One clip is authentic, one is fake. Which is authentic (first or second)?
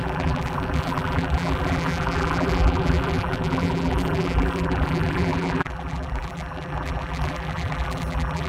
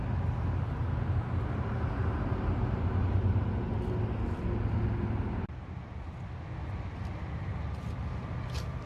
second